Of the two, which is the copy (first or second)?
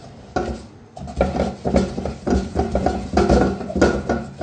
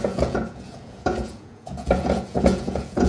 second